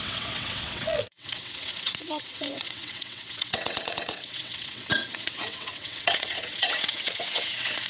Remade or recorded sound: remade